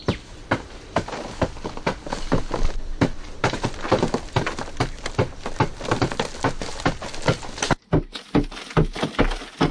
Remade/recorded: recorded